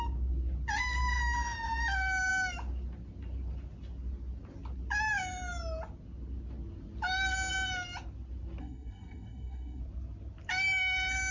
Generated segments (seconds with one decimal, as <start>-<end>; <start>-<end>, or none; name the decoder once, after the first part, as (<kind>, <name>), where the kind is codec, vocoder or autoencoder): 8.6-9.8 (codec, SNAC)